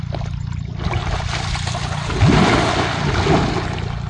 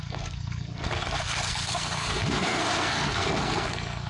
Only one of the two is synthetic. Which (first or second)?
second